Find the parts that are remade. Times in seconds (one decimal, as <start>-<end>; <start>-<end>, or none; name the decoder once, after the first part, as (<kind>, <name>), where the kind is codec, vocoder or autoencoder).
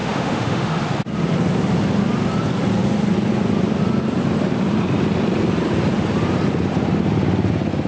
0.0-0.8 (autoencoder, DAC-VAE)